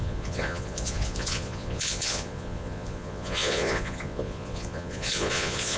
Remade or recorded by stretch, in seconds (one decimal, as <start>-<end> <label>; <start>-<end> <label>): 0.0-5.8 remade